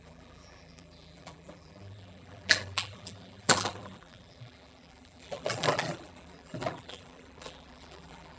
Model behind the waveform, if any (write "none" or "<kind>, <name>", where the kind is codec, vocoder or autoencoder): vocoder, BigVGAN v2